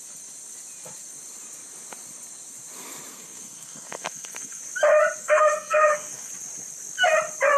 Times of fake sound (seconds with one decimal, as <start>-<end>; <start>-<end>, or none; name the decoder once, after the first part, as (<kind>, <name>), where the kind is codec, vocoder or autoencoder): 3.1-4.6 (codec, SNAC); 5.2-6.3